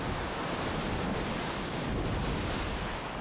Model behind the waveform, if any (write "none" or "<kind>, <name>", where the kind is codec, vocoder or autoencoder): none